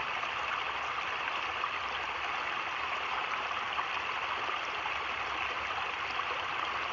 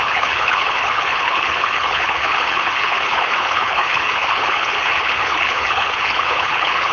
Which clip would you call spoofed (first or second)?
second